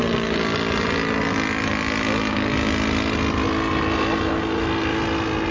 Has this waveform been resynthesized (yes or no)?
no